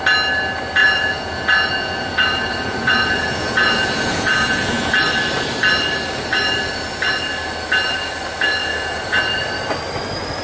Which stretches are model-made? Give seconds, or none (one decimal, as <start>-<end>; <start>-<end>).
0.8-4.9; 8.6-9.2